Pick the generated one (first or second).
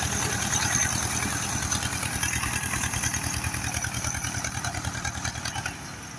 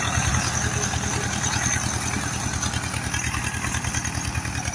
first